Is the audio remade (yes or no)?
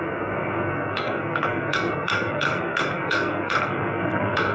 yes